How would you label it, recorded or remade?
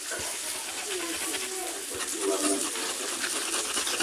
recorded